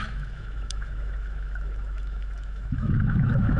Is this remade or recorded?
remade